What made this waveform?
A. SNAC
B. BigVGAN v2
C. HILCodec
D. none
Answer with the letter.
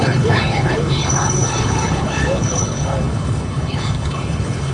C